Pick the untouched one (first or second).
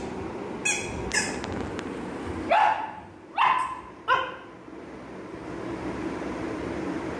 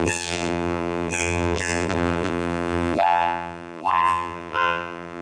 first